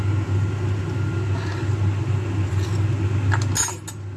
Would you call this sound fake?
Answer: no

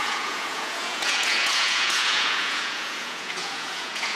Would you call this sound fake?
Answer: yes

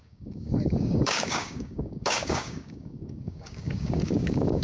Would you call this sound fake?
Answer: yes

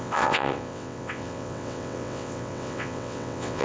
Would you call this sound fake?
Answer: yes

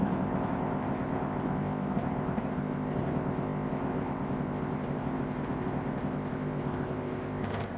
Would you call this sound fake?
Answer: yes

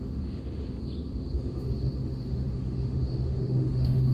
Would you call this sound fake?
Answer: yes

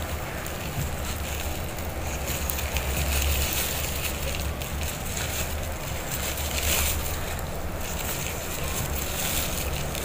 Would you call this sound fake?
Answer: no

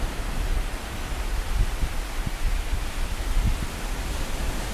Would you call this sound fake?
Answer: no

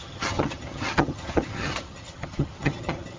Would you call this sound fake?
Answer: yes